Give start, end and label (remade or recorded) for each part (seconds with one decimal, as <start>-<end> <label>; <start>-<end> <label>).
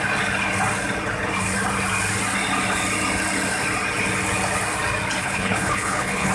0.0-5.2 recorded; 5.2-6.3 remade